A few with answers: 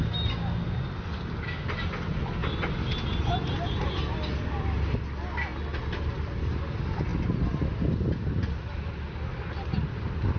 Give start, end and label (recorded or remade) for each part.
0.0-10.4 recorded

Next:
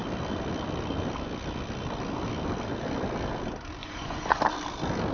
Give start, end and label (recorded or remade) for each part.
0.0-3.8 recorded; 3.8-4.4 remade; 4.4-5.1 recorded

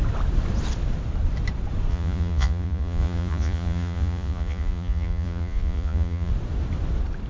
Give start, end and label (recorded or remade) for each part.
0.0-1.9 recorded; 1.9-6.3 remade; 6.3-7.3 recorded

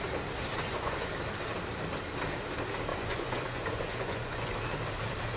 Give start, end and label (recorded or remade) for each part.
0.0-0.6 recorded; 0.6-1.1 remade; 1.1-2.9 recorded; 2.9-4.5 remade; 4.5-5.4 recorded

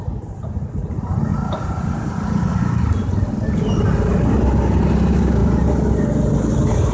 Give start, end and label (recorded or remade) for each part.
0.0-6.9 recorded

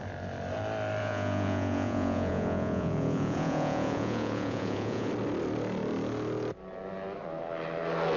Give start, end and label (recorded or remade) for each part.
0.0-1.0 recorded; 1.0-5.1 remade; 5.1-8.2 recorded